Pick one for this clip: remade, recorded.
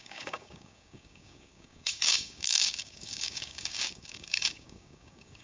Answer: remade